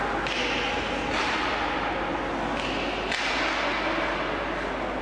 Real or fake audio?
real